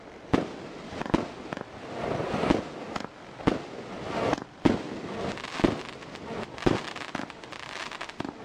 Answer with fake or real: real